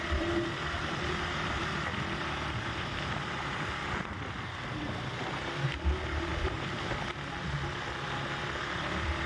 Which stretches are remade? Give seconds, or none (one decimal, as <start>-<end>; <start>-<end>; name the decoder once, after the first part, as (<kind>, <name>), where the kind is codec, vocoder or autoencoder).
0.0-6.3 (vocoder, BigVGAN v2); 8.4-9.3